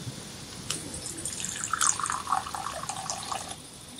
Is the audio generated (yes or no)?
no